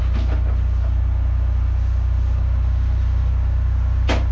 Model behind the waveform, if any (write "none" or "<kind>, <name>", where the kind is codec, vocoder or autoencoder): none